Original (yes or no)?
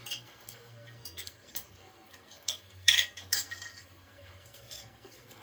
no